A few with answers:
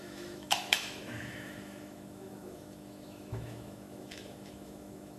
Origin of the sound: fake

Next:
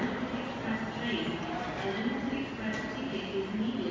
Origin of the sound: real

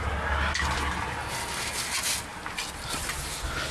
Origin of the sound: real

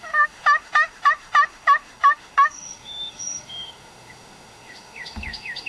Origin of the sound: fake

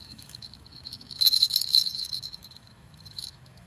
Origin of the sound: fake